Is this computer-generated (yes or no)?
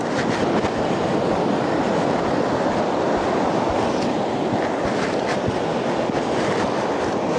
no